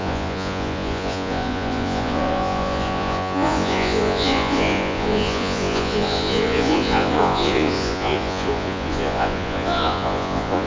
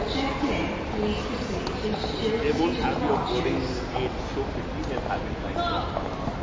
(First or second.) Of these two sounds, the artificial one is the first